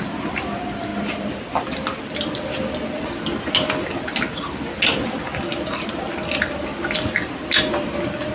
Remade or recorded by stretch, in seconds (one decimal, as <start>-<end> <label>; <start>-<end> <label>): 0.0-8.3 recorded